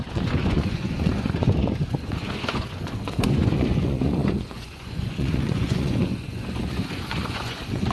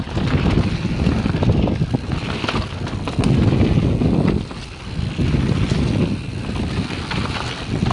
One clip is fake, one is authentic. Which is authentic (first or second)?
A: second